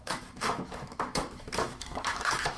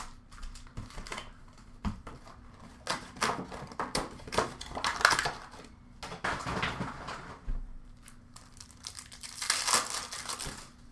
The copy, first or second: first